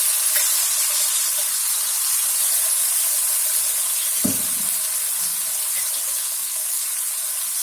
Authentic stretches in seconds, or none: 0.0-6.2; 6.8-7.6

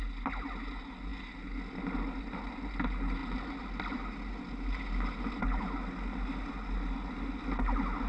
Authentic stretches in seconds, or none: 0.0-8.1

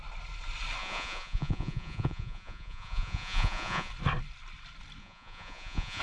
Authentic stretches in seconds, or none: 0.0-0.8; 3.9-5.0